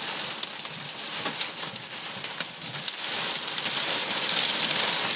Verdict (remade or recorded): recorded